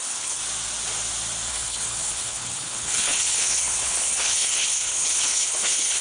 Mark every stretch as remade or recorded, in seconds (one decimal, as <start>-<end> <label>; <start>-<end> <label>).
0.0-0.4 remade; 0.4-1.5 recorded; 1.5-6.0 remade